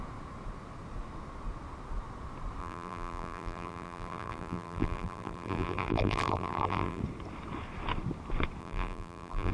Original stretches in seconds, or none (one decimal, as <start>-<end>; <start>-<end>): 0.0-2.6; 7.0-8.6